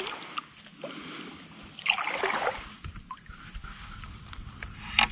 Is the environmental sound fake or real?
real